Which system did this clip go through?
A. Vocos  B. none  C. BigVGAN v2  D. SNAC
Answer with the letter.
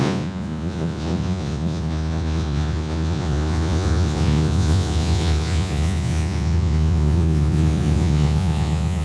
A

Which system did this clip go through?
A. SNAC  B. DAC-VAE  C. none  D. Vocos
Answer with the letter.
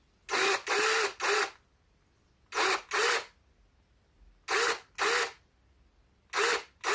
C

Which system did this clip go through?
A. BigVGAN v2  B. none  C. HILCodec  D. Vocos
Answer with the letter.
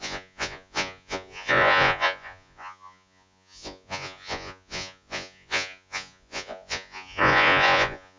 D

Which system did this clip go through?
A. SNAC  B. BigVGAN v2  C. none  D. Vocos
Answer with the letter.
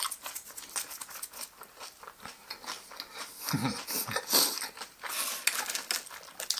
C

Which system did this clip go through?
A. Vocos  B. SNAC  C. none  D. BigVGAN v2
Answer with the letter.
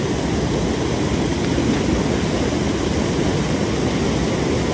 C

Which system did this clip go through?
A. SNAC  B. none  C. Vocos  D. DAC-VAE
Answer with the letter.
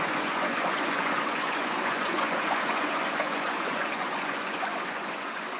C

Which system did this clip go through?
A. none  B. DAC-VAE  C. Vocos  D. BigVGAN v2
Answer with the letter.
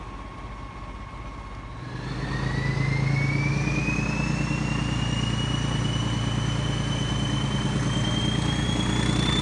A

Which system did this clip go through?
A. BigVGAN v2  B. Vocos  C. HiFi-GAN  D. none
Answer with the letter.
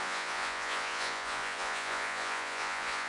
B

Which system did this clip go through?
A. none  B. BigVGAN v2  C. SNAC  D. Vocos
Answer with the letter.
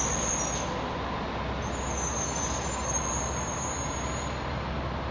A